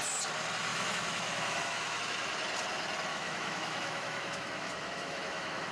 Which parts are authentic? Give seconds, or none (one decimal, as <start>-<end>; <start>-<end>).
0.0-0.7; 2.0-3.1

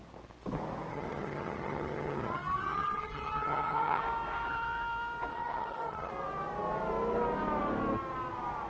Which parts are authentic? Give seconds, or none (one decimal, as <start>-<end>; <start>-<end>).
0.0-0.9; 4.0-5.3; 6.1-8.7

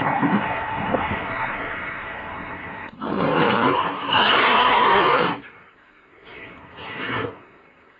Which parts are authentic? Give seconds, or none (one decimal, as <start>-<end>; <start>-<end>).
none

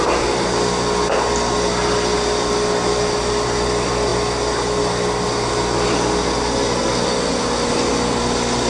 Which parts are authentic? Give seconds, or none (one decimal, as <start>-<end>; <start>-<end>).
0.0-8.7

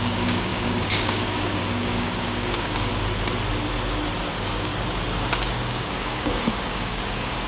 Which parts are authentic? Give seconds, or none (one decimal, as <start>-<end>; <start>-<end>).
2.9-4.3; 4.7-5.4